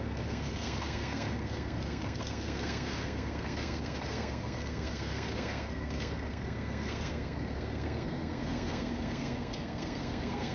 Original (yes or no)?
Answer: no